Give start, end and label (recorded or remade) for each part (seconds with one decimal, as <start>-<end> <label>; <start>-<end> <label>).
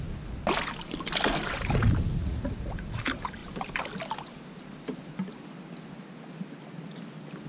0.0-2.2 recorded; 2.2-3.0 remade; 3.0-7.5 recorded